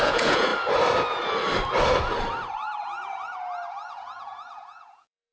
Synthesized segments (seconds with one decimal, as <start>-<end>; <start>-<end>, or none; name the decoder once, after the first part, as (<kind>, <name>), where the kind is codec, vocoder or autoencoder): 0.0-0.5 (vocoder, Vocos); 3.7-5.3